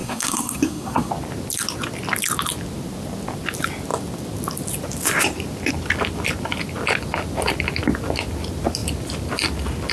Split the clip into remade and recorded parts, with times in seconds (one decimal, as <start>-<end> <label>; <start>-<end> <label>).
0.0-1.1 remade; 1.1-9.9 recorded